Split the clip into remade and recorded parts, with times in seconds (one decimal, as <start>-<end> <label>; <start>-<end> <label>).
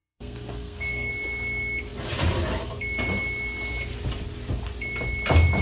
0.0-1.1 remade; 1.1-5.6 recorded